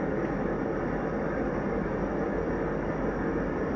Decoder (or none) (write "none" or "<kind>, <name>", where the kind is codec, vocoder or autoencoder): none